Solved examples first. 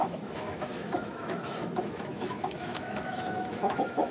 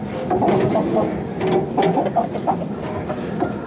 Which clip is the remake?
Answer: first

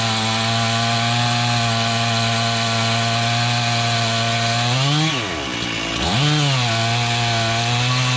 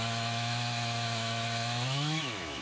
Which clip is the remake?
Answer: second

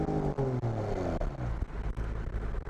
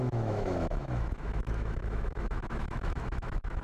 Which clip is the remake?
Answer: second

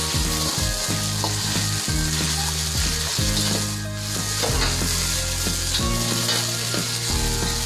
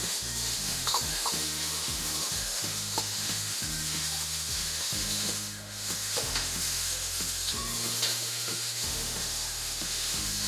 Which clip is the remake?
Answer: second